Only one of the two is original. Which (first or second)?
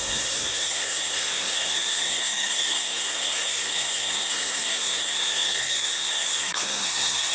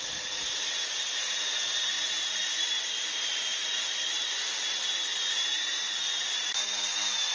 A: second